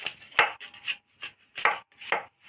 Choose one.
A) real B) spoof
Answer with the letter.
A